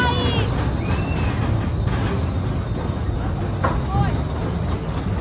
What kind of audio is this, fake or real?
real